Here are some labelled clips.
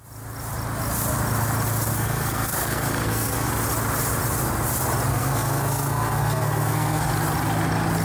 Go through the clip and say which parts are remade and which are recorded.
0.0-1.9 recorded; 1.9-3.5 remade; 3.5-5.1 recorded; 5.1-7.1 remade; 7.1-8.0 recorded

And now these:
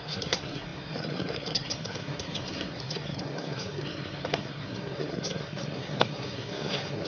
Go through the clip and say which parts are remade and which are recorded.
0.0-7.1 remade